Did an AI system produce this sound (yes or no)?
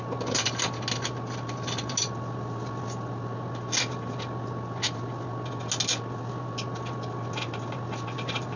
no